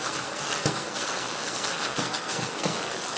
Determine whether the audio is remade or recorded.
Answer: remade